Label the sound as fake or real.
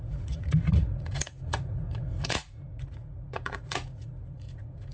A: fake